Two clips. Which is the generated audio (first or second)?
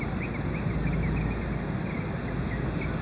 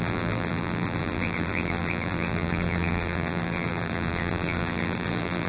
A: second